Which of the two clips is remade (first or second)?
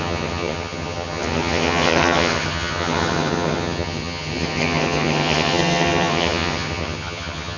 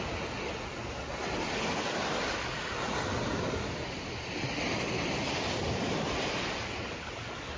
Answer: first